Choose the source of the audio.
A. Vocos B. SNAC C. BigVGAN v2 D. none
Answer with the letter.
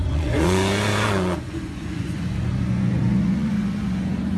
A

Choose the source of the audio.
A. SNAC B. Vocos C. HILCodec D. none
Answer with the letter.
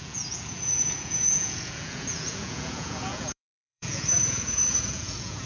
B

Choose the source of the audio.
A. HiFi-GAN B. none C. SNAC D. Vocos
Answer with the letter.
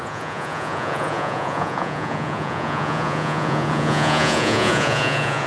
D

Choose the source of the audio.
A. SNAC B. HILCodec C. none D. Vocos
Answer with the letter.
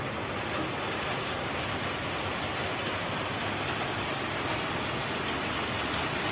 C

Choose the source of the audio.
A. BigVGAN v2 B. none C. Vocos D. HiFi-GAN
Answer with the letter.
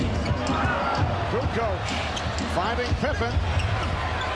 B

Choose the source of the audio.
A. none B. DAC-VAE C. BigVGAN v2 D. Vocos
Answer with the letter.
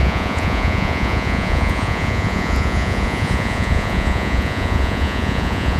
D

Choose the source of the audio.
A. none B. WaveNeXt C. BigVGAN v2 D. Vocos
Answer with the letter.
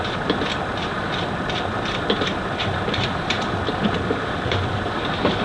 A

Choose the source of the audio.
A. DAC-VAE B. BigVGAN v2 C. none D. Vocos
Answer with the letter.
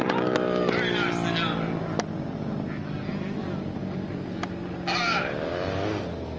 C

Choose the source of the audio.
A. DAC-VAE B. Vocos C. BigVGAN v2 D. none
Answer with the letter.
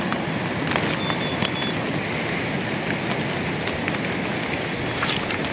D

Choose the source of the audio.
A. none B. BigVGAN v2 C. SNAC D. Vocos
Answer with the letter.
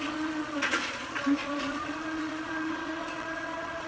D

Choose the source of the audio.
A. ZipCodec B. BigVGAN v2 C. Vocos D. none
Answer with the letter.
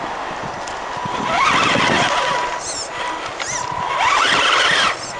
D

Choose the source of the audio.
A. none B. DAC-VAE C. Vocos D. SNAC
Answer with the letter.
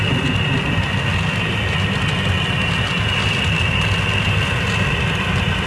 A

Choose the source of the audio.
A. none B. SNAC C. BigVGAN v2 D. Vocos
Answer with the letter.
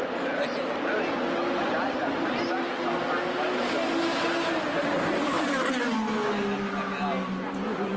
A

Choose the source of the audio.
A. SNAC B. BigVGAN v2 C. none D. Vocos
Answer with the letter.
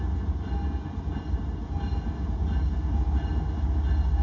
C